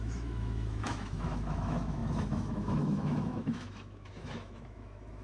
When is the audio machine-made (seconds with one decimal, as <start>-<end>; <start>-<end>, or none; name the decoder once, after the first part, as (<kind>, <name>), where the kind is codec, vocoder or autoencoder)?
0.0-5.2 (autoencoder, DAC-VAE)